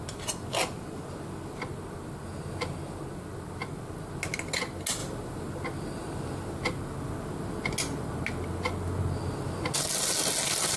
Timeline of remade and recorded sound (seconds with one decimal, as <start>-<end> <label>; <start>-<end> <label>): 0.0-10.8 recorded